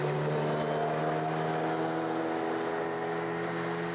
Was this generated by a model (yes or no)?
no